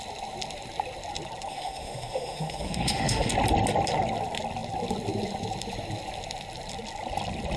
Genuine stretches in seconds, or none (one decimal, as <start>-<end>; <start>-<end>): 0.0-1.5; 3.3-7.6